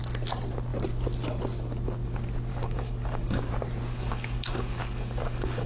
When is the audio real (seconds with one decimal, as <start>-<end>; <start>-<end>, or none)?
0.0-2.5; 3.5-3.9